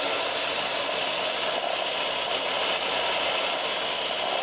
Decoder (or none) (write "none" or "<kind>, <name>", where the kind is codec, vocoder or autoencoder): none